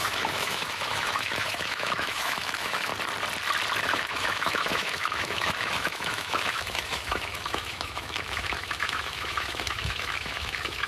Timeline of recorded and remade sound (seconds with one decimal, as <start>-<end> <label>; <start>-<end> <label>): 0.0-2.9 remade; 2.9-3.8 recorded; 3.8-10.9 remade